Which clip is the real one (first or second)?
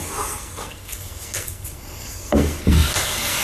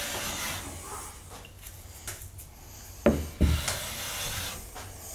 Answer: second